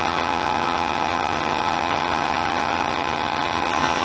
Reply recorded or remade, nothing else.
remade